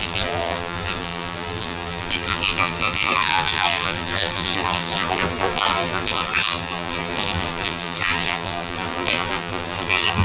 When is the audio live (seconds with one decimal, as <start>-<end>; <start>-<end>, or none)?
none